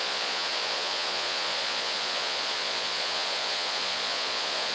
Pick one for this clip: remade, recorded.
remade